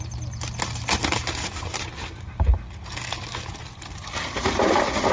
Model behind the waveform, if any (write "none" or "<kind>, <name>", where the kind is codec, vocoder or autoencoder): none